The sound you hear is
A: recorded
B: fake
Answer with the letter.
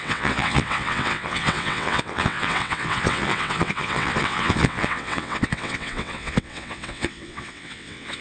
B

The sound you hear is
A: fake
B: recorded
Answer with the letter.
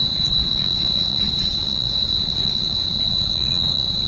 A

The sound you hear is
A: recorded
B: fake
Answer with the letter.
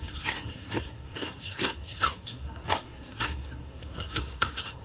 B